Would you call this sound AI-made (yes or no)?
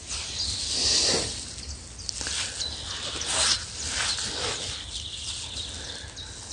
no